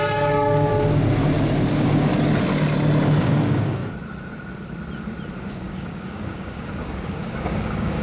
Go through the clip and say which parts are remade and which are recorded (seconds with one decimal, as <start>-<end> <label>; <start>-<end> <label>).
0.0-0.7 remade; 0.7-1.7 recorded; 1.7-2.1 remade; 2.1-3.2 recorded; 3.2-3.8 remade; 3.8-5.5 recorded; 5.5-8.0 remade